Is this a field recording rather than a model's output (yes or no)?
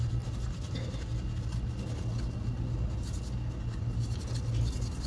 yes